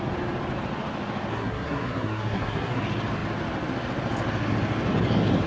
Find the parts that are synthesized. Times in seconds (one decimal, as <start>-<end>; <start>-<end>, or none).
1.3-2.8